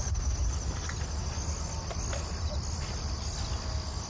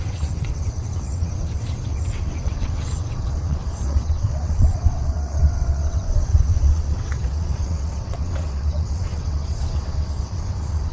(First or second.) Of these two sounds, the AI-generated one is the second